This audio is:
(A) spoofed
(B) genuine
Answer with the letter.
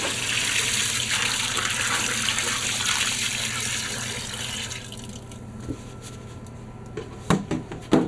B